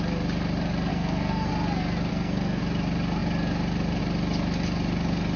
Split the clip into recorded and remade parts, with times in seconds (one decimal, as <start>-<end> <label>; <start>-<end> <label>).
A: 0.0-0.9 recorded; 0.9-1.5 remade; 1.5-2.1 recorded; 2.1-2.6 remade; 2.6-5.4 recorded